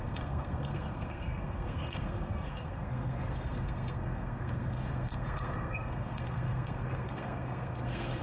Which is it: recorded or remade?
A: remade